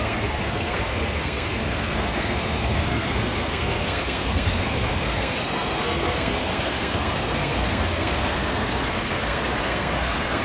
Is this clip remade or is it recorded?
remade